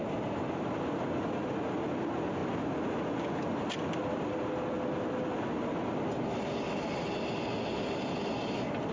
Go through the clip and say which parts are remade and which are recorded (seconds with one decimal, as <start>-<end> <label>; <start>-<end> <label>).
0.0-8.9 recorded